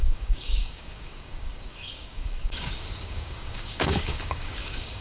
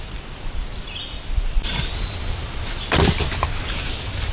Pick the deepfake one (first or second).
first